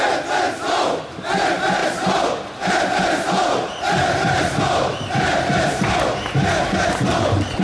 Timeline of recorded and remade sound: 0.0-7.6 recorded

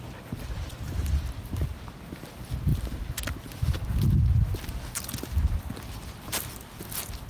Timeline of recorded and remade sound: 0.0-7.3 recorded

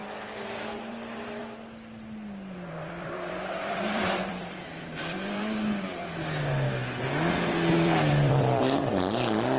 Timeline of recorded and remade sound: 0.0-0.6 recorded; 0.6-1.4 remade; 1.4-2.7 recorded; 2.7-6.0 remade; 6.0-7.7 recorded; 7.7-9.6 remade

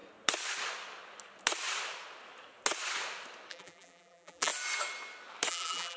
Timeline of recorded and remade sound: 0.0-3.5 recorded; 3.5-4.5 remade; 4.5-5.5 recorded; 5.5-6.0 remade

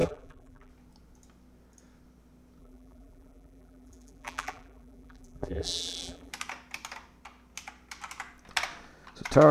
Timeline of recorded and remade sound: 0.0-0.7 remade; 0.7-2.6 recorded; 2.6-6.3 remade; 6.3-9.5 recorded

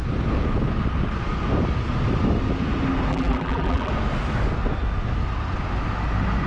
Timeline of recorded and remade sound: 0.0-3.1 recorded; 3.1-3.9 remade; 3.9-6.5 recorded